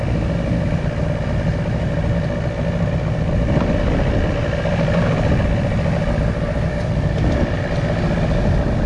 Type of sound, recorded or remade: recorded